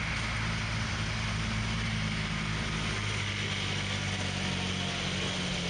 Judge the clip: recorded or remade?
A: recorded